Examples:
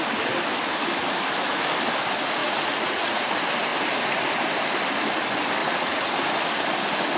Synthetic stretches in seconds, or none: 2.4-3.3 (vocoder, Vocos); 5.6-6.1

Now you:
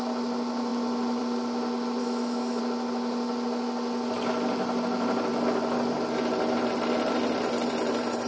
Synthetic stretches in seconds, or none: 2.0-2.6 (autoencoder, DAC-VAE)

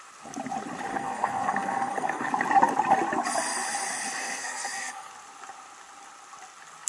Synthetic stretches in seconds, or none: 0.9-2.3 (codec, SNAC); 4.2-5.1

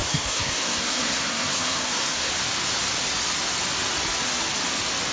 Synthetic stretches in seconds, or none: 0.0-2.3 (codec, SNAC)